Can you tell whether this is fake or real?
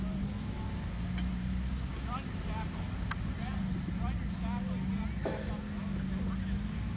real